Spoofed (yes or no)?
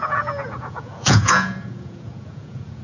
yes